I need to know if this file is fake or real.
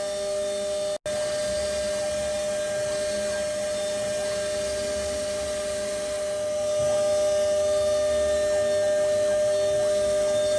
real